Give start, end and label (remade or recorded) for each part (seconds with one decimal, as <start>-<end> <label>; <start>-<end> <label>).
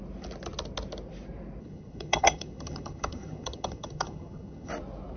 0.0-1.6 recorded; 1.6-4.7 remade; 4.7-5.2 recorded